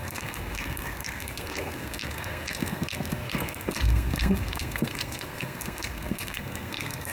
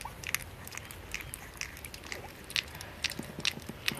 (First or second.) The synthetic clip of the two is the first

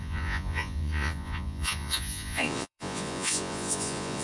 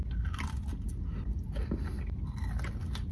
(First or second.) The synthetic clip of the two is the first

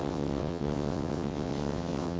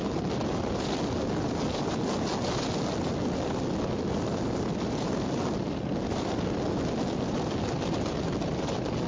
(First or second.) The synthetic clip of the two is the first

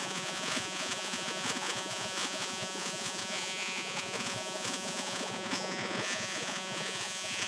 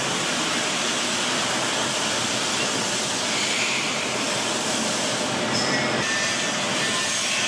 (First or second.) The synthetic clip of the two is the first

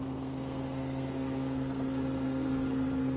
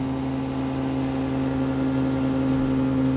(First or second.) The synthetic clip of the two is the first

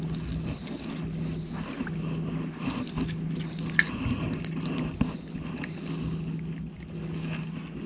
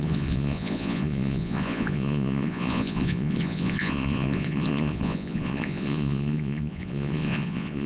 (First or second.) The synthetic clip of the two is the second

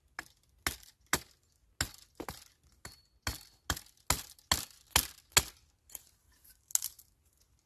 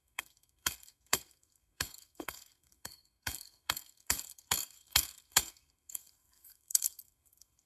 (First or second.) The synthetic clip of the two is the second